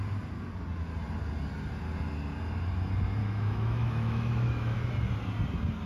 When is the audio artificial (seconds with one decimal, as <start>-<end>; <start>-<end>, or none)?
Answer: 3.2-4.9